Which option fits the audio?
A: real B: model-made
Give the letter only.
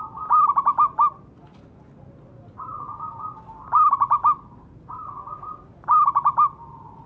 A